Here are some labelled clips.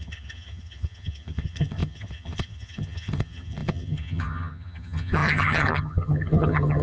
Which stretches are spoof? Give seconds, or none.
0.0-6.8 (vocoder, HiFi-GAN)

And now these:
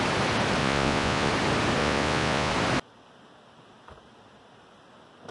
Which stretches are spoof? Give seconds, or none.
0.6-1.3 (vocoder, Vocos); 1.8-2.5